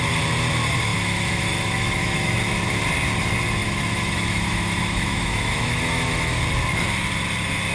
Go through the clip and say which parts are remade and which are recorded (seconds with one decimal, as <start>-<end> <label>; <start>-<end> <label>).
0.0-0.9 recorded; 0.9-2.3 remade; 2.3-3.6 recorded; 3.6-6.4 remade; 6.4-7.7 recorded